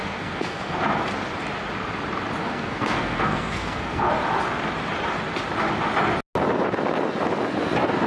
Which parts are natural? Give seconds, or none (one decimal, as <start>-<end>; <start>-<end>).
0.8-2.4; 4.1-8.1